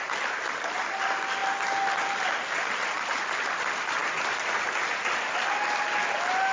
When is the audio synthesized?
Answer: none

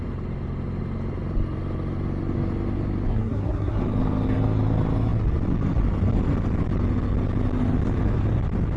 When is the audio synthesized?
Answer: 3.1-3.8

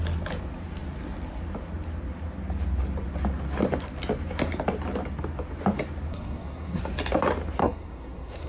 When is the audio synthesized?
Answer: 6.1-6.8; 7.6-8.5

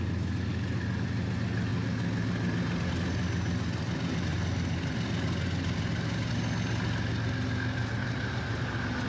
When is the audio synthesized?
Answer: 8.0-8.6

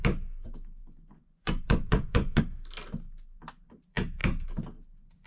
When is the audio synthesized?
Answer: 0.8-2.4

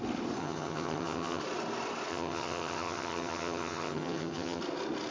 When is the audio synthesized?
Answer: 0.4-1.4; 2.1-4.6

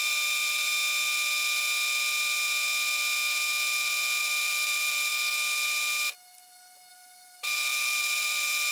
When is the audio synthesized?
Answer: 0.0-0.8; 4.2-5.1; 6.9-8.7

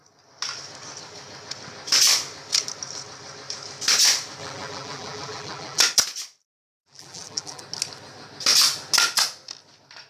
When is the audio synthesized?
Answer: 4.4-5.8; 6.8-7.6